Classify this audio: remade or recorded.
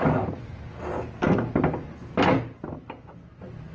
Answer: recorded